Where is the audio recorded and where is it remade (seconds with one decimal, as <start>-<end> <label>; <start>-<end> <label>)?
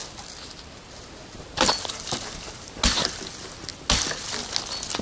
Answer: 0.0-5.0 recorded